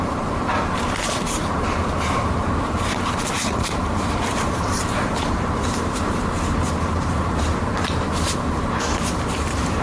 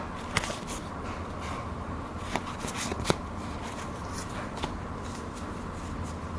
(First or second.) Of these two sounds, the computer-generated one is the first